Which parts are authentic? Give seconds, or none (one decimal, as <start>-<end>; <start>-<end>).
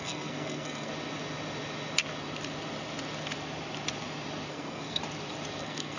0.9-4.5; 5.0-5.6